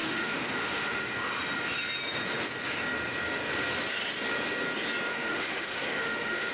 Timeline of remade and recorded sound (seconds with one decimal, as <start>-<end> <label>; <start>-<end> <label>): 0.0-1.1 remade; 1.1-5.1 recorded; 5.1-6.5 remade